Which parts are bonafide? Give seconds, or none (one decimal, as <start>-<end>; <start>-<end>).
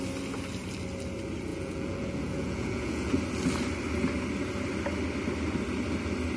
0.0-1.5; 3.2-6.4